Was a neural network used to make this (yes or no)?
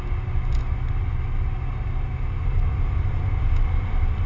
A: no